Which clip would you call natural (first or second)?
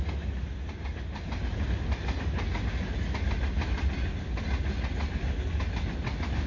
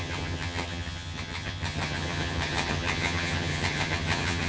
first